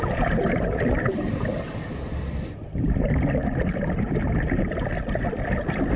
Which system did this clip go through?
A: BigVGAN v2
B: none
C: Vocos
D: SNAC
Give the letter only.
A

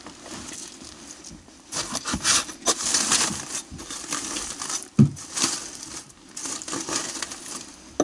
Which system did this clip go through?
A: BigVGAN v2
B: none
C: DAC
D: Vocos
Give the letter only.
B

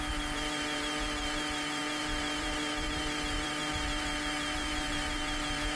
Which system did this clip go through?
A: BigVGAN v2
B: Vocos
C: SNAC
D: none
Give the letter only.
A